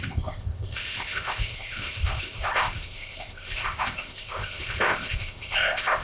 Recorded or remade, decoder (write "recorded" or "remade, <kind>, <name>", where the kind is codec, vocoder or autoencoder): remade, codec, ZipCodec